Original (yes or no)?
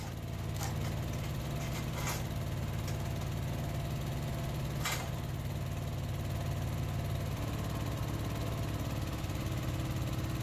yes